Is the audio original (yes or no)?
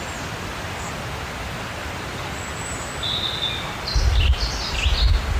yes